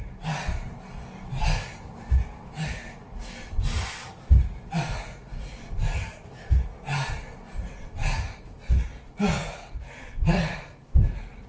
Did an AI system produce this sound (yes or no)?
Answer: no